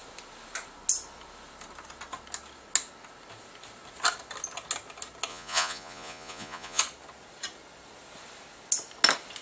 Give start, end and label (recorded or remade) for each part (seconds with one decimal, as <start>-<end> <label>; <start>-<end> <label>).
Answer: 0.0-5.3 recorded; 5.3-6.8 remade; 6.8-9.4 recorded